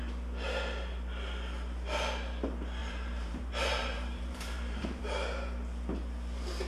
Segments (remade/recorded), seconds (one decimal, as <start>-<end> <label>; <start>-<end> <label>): 0.0-2.8 recorded; 2.8-5.0 remade; 5.0-6.7 recorded

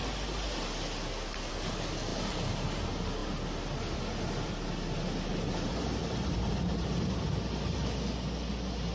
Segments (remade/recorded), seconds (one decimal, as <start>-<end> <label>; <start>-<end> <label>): 0.0-6.0 recorded; 6.0-7.3 remade; 7.3-8.9 recorded